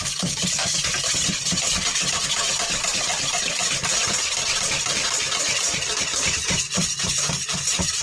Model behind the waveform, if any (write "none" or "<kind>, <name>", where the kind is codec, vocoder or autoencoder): vocoder, BigVGAN v2